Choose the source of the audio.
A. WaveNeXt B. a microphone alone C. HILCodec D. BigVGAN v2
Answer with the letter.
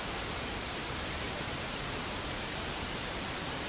D